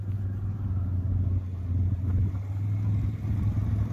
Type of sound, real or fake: real